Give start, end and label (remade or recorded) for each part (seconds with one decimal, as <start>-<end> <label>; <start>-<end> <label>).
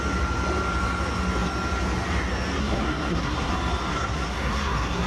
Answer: 0.0-2.6 recorded; 2.6-3.5 remade; 3.5-3.9 recorded; 3.9-5.1 remade